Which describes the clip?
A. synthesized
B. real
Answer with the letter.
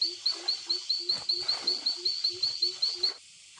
B